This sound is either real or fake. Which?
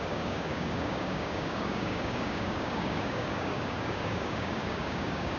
fake